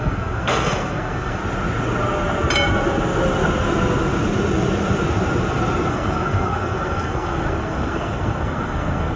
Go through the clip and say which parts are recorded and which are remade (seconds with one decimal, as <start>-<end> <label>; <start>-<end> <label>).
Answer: 0.0-1.4 remade; 1.4-5.9 recorded; 5.9-9.2 remade